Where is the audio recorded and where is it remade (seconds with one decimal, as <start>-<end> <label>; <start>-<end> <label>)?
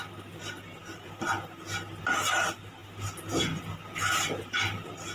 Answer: 0.0-5.1 recorded